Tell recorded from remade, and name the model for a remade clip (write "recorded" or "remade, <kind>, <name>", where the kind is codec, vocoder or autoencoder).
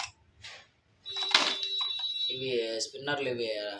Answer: recorded